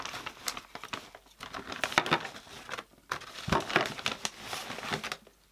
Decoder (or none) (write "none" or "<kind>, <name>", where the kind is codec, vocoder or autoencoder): none